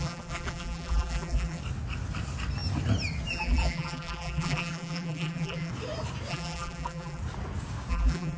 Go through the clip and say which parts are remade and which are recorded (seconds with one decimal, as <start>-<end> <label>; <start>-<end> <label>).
0.0-1.6 remade; 1.6-3.3 recorded; 3.3-5.7 remade; 5.7-6.3 recorded; 6.3-7.2 remade; 7.2-7.9 recorded; 7.9-8.4 remade